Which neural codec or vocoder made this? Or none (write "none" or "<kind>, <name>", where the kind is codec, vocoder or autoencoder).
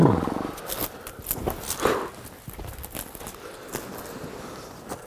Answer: none